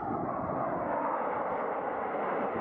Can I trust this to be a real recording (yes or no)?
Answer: yes